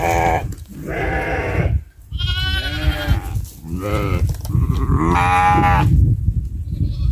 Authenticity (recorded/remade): recorded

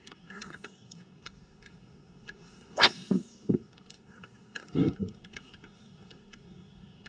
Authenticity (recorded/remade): remade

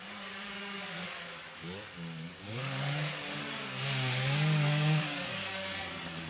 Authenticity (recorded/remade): remade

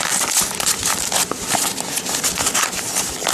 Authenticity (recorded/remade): recorded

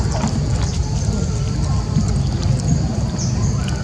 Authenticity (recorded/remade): recorded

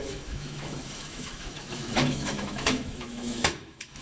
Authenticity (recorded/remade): remade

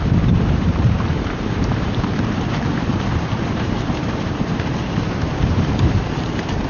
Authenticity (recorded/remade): remade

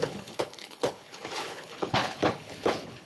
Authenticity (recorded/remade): remade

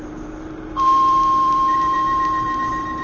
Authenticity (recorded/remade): remade